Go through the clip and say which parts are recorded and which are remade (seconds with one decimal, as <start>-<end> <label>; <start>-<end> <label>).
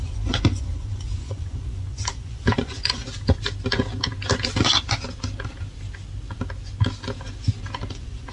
0.0-3.0 remade; 3.0-7.9 recorded; 7.9-8.3 remade